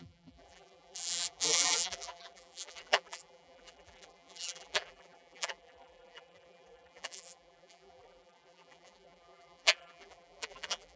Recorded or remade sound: remade